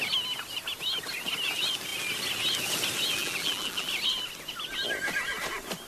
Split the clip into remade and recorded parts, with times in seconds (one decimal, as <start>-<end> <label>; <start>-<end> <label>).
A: 0.0-3.2 recorded; 3.2-3.9 remade; 3.9-5.9 recorded